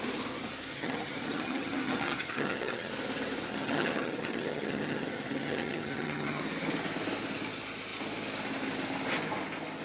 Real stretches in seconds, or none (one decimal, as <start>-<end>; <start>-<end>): 0.0-0.7; 2.9-3.5; 6.4-9.8